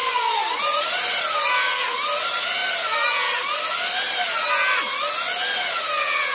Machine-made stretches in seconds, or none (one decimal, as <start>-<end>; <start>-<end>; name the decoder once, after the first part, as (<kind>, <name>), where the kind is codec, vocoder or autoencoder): none